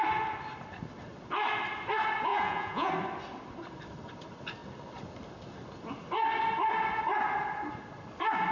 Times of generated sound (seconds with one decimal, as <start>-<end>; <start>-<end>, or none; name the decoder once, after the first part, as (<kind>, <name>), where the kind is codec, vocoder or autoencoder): 2.3-2.9 (vocoder, Vocos)